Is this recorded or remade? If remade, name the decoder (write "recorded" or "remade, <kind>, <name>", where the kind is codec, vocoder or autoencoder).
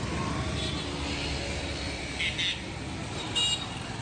recorded